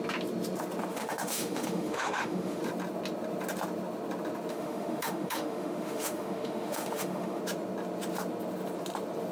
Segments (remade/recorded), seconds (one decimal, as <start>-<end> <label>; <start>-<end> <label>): 0.0-0.9 recorded; 0.9-2.6 remade; 2.6-4.5 recorded; 4.5-7.4 remade; 7.4-9.3 recorded